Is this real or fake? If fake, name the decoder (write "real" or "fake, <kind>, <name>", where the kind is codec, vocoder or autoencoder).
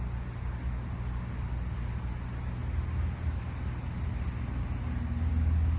real